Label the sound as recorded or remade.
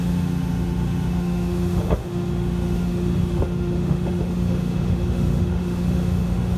remade